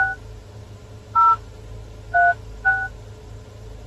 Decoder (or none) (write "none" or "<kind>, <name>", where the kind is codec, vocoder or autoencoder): none